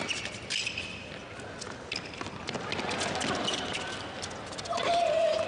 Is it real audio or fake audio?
real